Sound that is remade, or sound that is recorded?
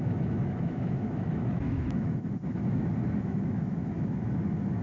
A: remade